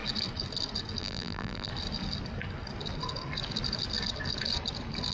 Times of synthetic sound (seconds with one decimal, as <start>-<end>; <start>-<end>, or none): 1.0-1.7